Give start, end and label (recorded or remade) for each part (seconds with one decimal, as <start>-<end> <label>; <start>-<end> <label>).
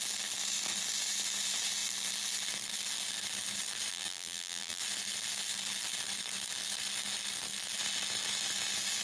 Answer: 0.0-3.9 recorded; 3.9-4.8 remade; 4.8-9.0 recorded